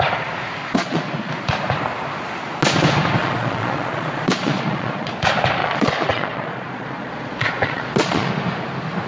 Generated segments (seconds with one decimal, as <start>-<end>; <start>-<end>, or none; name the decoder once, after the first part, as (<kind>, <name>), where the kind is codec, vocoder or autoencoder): 0.6-1.3 (vocoder, Vocos); 3.2-5.1; 5.6-8.3